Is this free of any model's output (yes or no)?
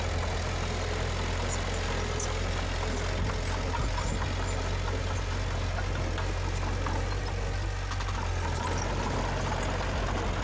yes